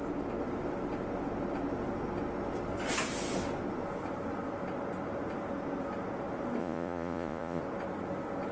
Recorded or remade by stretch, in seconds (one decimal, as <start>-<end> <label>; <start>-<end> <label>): 0.0-6.6 recorded; 6.6-7.6 remade; 7.6-8.5 recorded